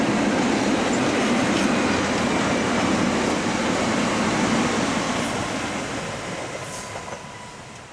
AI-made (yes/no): no